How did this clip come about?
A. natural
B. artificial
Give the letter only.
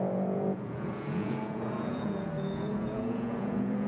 B